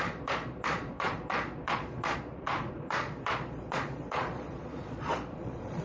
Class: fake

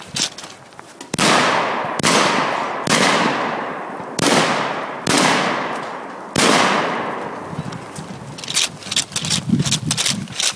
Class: real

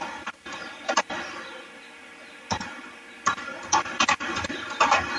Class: real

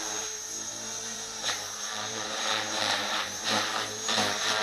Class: fake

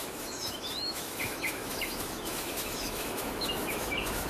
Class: fake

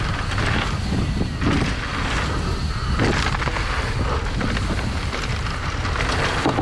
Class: real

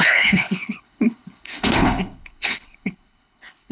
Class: fake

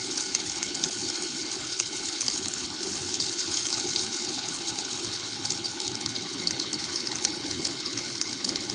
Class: fake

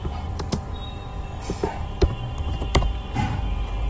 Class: fake